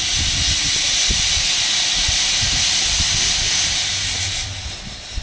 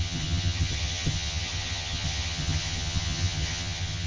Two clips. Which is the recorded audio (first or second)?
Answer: first